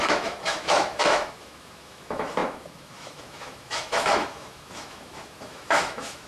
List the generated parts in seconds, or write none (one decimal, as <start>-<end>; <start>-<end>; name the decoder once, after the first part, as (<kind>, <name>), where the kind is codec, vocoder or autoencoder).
0.0-6.3 (autoencoder, DAC-VAE)